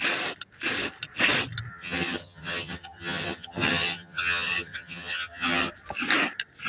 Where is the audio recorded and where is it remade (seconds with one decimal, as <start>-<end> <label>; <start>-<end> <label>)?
0.0-1.7 recorded; 1.7-5.7 remade; 5.7-6.7 recorded